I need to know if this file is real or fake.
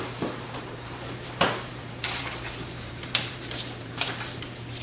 fake